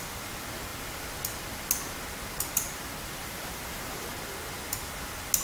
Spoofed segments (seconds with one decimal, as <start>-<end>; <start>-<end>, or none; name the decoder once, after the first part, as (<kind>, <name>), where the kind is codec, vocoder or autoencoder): 3.2-4.1 (vocoder, BigVGAN v2)